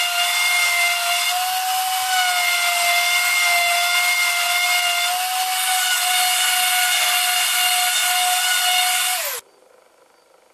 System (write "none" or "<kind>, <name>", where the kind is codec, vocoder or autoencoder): none